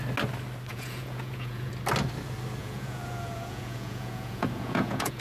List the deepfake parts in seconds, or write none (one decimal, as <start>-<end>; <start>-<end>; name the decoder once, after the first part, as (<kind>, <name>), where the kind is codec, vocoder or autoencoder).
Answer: 0.7-1.7 (vocoder, Vocos); 2.6-5.2